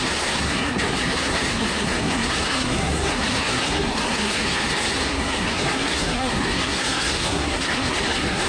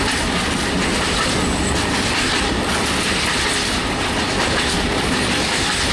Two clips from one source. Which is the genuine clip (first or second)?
second